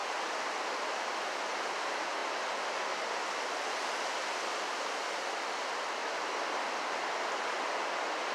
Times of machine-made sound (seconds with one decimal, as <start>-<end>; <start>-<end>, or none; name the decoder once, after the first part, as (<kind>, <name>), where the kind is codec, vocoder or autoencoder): 0.0-1.2 (vocoder, BigVGAN v2); 6.0-6.6